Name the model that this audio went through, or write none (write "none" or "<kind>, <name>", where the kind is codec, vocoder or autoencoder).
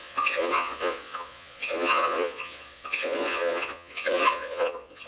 vocoder, Vocos